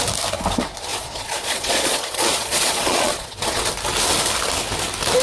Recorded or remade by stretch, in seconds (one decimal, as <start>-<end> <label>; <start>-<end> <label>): 0.0-0.9 recorded; 0.9-3.6 remade; 3.6-5.2 recorded